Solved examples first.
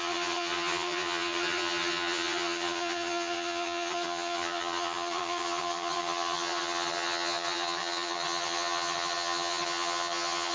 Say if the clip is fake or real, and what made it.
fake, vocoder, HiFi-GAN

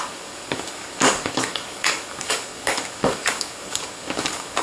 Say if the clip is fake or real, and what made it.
fake, codec, DAC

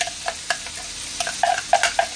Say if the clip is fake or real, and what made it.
real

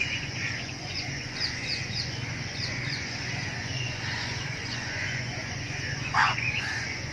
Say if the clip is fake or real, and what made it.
fake, vocoder, Vocos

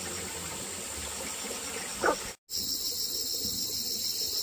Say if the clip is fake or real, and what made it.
real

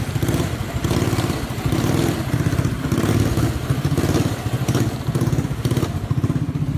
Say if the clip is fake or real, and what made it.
real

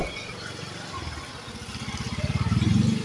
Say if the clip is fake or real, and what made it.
real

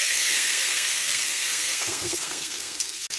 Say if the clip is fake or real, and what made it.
fake, codec, SNAC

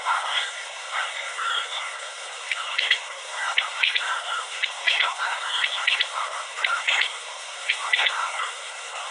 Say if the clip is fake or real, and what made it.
fake, codec, SNAC